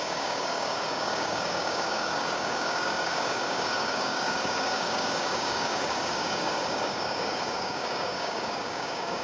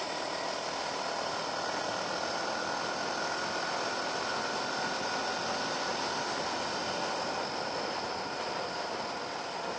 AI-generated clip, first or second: first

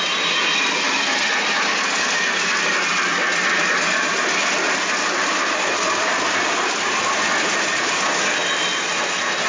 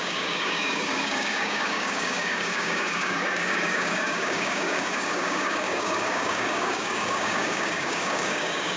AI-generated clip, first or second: second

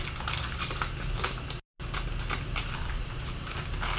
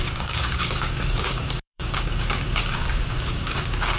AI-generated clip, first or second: second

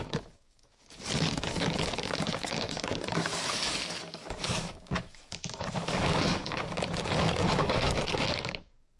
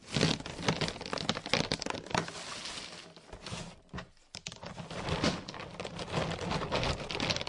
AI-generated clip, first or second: first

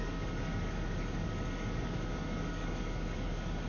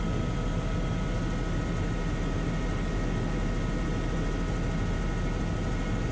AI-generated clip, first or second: first